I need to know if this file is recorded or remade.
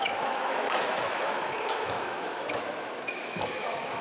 remade